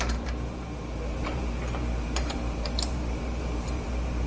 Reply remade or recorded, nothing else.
remade